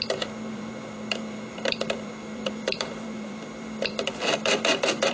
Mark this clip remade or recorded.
remade